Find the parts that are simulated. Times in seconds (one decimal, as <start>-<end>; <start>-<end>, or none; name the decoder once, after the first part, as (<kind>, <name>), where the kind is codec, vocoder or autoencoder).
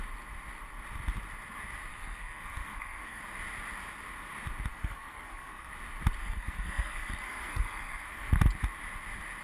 1.9-3.2 (codec, SNAC); 4.7-5.7; 6.2-8.3